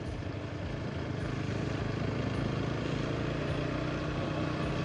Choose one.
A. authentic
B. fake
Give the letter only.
A